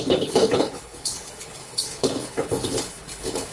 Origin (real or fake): fake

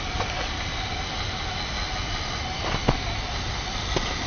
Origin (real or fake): real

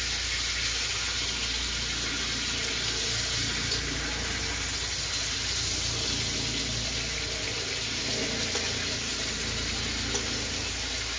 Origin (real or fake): real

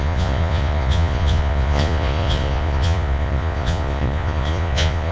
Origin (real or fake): fake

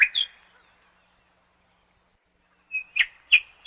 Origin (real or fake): real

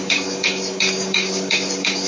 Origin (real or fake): fake